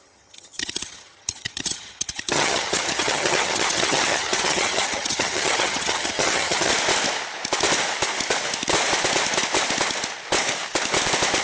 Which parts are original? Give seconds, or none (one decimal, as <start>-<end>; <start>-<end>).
6.7-11.4